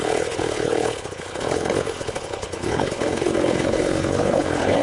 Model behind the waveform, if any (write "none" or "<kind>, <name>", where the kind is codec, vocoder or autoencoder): codec, HILCodec